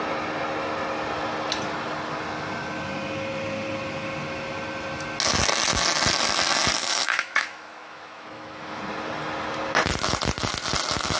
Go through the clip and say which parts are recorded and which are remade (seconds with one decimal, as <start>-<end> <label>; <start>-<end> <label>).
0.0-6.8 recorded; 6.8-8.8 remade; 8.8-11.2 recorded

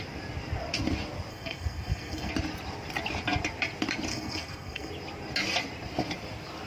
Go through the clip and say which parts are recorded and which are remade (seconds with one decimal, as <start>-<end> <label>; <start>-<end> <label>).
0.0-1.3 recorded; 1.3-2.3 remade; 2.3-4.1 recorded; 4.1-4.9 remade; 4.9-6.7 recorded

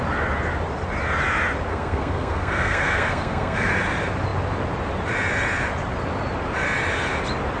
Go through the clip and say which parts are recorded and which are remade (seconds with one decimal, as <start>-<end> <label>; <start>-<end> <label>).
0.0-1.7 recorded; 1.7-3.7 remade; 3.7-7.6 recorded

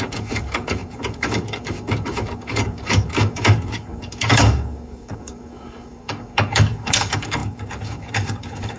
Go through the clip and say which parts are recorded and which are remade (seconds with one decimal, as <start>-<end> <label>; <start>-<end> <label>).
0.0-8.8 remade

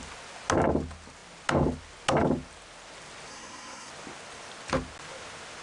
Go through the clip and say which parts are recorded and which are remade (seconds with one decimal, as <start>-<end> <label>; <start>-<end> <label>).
0.0-3.3 recorded; 3.3-3.9 remade; 3.9-5.6 recorded